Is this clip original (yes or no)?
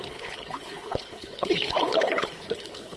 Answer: no